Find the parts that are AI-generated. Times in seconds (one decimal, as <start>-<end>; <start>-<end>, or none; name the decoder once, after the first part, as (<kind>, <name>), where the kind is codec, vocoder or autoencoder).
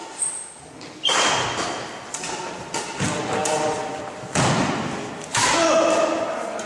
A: none